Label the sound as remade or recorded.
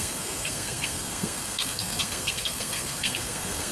remade